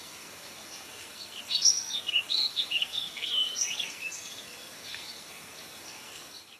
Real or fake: fake